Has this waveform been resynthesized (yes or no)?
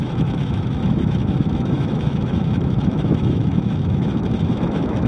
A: yes